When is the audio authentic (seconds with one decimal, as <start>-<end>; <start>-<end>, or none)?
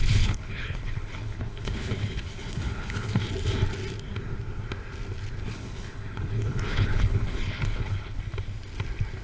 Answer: 3.2-5.4; 8.2-9.2